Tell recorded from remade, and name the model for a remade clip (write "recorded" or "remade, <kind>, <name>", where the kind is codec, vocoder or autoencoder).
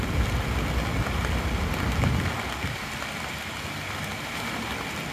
recorded